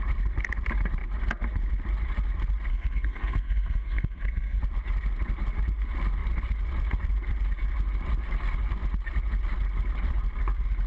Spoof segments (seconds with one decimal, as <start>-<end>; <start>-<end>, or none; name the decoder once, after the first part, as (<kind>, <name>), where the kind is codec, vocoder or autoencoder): 2.7-4.6 (codec, SNAC)